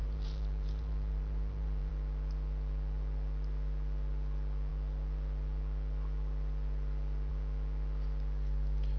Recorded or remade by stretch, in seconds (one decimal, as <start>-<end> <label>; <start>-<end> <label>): 0.0-1.9 remade; 1.9-9.0 recorded